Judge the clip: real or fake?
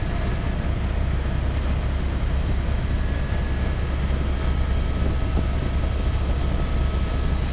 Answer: real